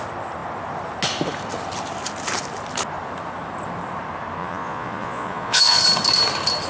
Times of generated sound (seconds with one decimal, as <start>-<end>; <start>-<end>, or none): 4.4-5.8